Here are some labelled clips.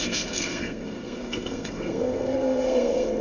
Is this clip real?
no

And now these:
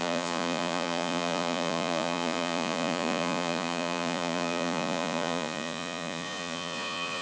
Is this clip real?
no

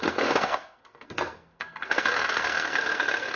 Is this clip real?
no